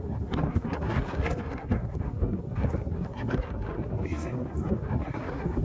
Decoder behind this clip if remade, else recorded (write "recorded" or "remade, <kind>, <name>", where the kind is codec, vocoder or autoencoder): remade, codec, SNAC